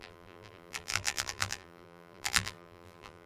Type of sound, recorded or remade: remade